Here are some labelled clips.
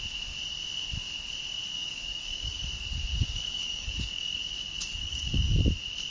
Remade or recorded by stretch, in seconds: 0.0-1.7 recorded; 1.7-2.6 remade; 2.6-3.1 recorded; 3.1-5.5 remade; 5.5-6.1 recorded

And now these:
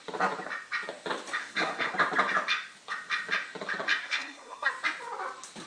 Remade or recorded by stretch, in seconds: 0.0-1.4 recorded; 1.4-1.9 remade; 1.9-4.0 recorded; 4.0-4.7 remade; 4.7-5.7 recorded

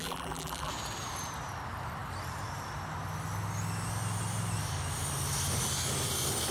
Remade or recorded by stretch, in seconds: 0.0-0.7 remade; 0.7-6.5 recorded

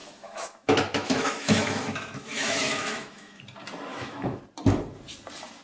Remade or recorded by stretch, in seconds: 0.0-3.4 remade; 3.4-3.9 recorded; 3.9-4.4 remade; 4.4-5.6 recorded

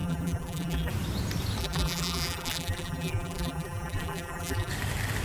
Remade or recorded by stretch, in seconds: 0.0-0.9 remade; 0.9-1.6 recorded; 1.6-4.7 remade; 4.7-5.2 recorded